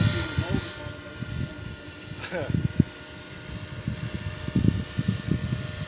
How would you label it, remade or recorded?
recorded